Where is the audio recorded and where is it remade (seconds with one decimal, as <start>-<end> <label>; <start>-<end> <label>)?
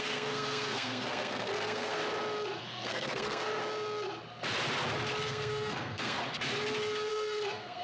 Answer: 0.0-2.0 remade; 2.0-2.6 recorded; 2.6-3.6 remade; 3.6-5.2 recorded; 5.2-6.2 remade; 6.2-7.1 recorded; 7.1-7.8 remade